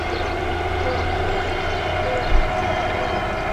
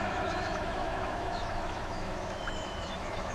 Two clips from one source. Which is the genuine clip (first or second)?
first